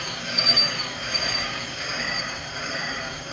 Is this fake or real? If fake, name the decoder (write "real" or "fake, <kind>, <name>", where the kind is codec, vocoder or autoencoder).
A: fake, codec, DAC